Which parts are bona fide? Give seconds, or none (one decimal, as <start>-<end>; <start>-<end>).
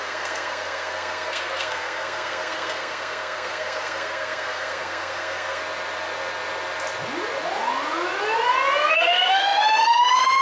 5.6-8.9